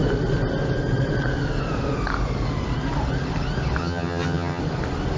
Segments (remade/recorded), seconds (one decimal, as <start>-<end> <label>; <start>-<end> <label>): 0.0-3.8 recorded; 3.8-4.6 remade; 4.6-5.2 recorded